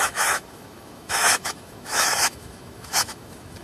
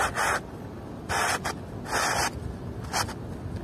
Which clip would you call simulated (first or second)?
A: first